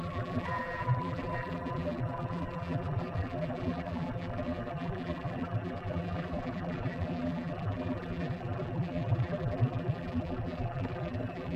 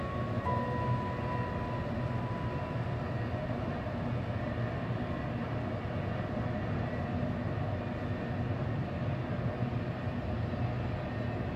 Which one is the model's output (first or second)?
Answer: first